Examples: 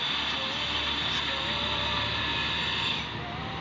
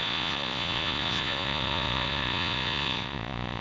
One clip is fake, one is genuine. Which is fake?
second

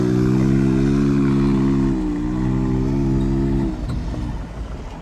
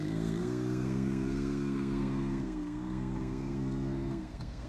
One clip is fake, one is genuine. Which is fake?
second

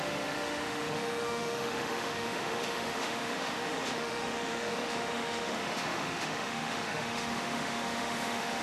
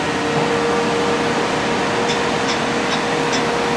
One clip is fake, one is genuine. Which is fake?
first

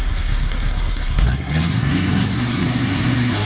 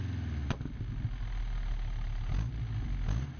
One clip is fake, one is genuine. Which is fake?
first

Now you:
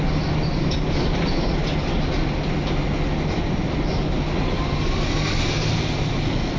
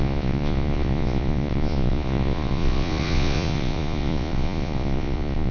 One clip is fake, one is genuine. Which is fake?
second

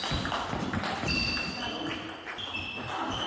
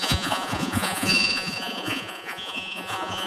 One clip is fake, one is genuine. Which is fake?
second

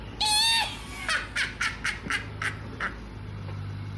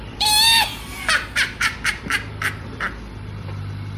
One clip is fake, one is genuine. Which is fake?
second